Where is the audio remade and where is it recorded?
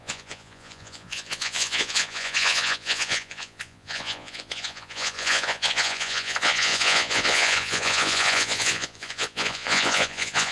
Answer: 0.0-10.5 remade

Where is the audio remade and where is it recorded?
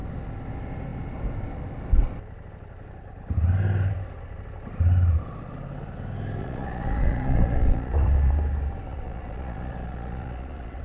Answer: 0.0-6.4 recorded; 6.4-8.3 remade; 8.3-8.9 recorded; 8.9-10.8 remade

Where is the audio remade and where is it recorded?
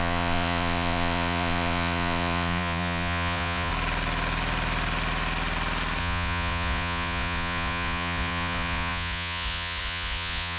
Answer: 0.0-3.7 remade; 3.7-6.0 recorded; 6.0-10.6 remade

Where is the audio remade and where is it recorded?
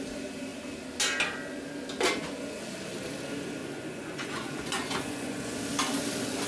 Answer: 0.0-3.6 recorded; 3.6-5.6 remade; 5.6-6.5 recorded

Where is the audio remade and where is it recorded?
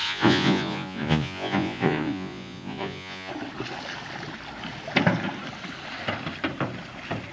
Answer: 0.0-3.3 remade; 3.3-7.3 recorded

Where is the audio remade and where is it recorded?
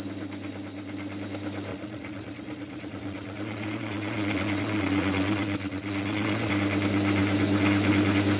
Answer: 0.0-1.7 recorded; 1.7-6.5 remade; 6.5-8.4 recorded